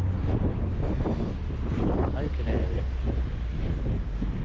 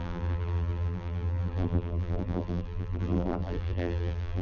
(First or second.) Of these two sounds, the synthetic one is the second